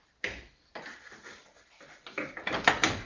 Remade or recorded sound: recorded